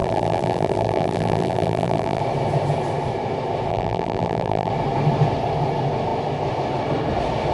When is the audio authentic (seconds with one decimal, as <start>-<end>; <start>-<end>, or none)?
2.2-3.7; 4.7-7.5